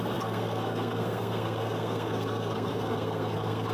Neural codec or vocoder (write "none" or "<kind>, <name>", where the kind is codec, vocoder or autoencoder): codec, SNAC